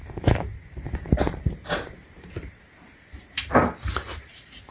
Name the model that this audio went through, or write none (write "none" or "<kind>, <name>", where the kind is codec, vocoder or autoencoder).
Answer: vocoder, BigVGAN v2